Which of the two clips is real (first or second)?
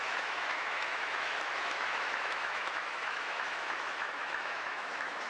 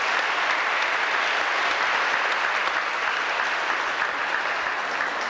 second